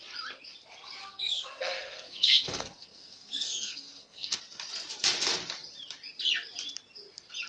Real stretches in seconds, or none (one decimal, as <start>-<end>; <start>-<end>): 0.0-1.0; 4.4-7.5